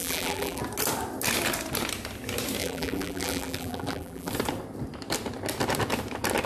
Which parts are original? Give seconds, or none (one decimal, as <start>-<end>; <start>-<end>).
0.6-2.6; 4.3-6.5

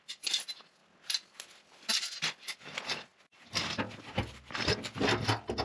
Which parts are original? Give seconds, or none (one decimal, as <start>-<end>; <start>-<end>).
0.0-5.6